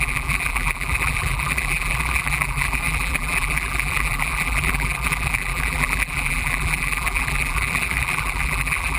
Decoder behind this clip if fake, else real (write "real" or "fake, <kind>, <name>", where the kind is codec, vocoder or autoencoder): fake, vocoder, BigVGAN v2